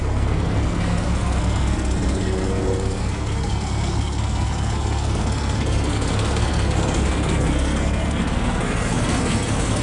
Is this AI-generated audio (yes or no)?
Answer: yes